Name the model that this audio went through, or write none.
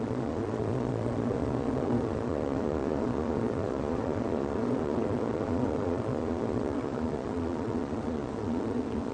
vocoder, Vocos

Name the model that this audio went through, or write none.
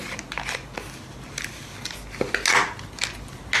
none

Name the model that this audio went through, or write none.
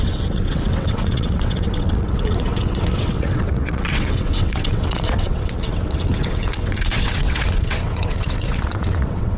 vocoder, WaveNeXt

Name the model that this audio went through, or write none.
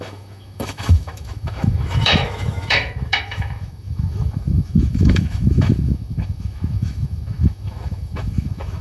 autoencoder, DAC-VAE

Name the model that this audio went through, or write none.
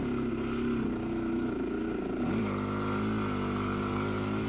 none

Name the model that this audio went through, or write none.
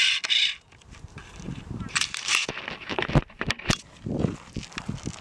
none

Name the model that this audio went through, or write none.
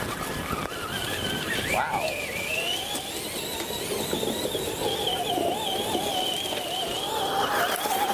none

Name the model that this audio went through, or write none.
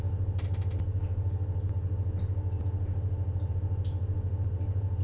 none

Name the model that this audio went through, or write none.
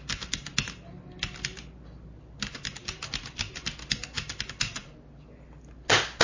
none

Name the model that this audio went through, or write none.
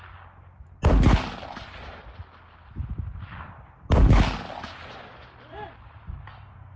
none